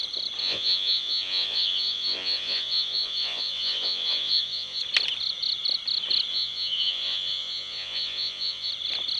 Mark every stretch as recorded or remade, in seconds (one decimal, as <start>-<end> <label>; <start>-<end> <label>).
0.0-0.4 recorded; 0.4-4.8 remade; 4.8-6.3 recorded; 6.3-8.7 remade; 8.7-9.2 recorded